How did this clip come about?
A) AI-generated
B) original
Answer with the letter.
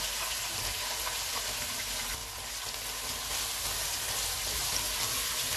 B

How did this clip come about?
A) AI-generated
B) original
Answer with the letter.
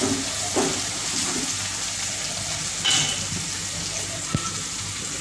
B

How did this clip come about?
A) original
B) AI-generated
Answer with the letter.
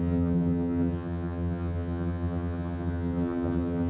B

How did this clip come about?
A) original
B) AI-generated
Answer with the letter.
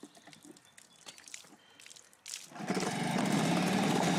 A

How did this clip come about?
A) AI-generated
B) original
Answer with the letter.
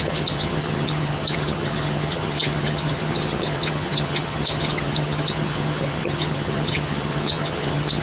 A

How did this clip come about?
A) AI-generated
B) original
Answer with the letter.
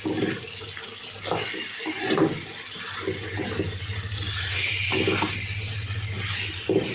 B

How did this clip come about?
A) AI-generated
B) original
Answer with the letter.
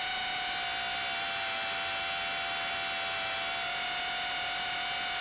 B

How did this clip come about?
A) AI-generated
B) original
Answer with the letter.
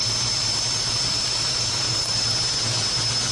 B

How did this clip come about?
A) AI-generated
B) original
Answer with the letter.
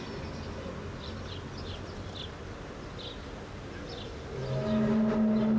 B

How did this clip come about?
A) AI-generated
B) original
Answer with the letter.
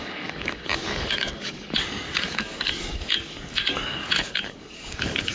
A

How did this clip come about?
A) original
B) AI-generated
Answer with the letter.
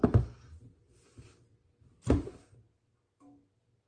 A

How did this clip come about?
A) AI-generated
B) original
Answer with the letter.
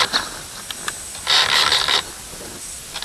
B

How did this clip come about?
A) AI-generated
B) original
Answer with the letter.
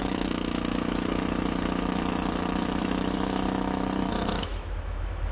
A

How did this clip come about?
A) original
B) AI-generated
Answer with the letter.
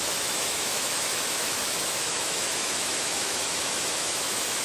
B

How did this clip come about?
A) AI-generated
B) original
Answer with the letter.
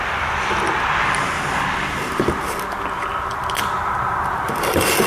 B